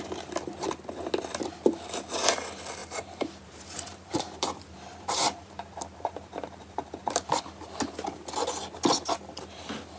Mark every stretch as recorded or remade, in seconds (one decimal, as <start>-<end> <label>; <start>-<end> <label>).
0.0-2.8 recorded; 2.8-7.4 remade; 7.4-10.0 recorded

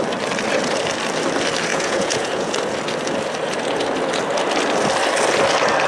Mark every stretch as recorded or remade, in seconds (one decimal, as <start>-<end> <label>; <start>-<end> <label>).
0.0-1.7 recorded; 1.7-2.5 remade; 2.5-5.9 recorded

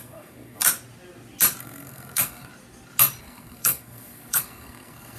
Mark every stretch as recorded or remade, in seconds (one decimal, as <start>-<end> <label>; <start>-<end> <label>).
0.0-0.6 remade; 0.6-1.6 recorded; 1.6-2.5 remade; 2.5-3.2 recorded; 3.2-5.2 remade

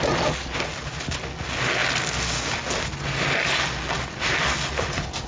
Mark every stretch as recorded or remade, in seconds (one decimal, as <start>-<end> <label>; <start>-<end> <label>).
0.0-5.3 recorded

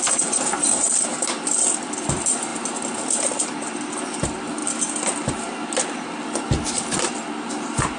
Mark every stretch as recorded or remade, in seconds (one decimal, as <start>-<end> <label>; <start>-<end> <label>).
0.0-8.0 recorded

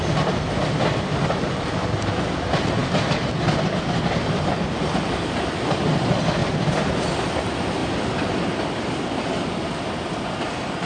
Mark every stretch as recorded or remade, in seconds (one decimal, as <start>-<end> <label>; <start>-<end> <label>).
0.0-6.4 recorded; 6.4-7.1 remade; 7.1-10.9 recorded